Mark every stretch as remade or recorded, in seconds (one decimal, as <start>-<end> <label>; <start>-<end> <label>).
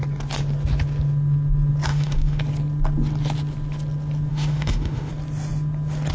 0.0-1.9 recorded; 1.9-2.4 remade; 2.4-4.3 recorded; 4.3-5.1 remade; 5.1-6.1 recorded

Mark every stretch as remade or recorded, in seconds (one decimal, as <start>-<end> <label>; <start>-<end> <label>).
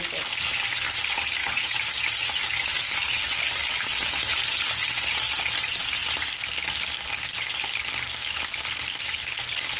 0.0-1.4 recorded; 1.4-3.2 remade; 3.2-3.6 recorded; 3.6-4.6 remade; 4.6-9.8 recorded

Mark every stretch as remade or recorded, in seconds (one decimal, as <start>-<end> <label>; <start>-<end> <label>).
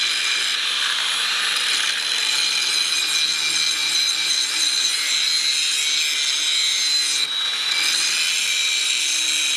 0.0-0.5 recorded; 0.5-1.1 remade; 1.1-3.8 recorded; 3.8-5.1 remade; 5.1-8.4 recorded; 8.4-9.0 remade; 9.0-9.6 recorded